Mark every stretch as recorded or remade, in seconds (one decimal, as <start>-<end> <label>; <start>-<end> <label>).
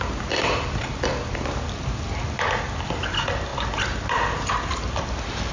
0.0-5.5 recorded